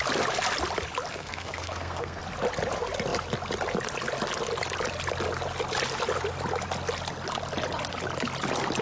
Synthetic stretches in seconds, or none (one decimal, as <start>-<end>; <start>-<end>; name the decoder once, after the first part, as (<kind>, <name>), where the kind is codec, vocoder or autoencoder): 1.1-2.2 (codec, SNAC)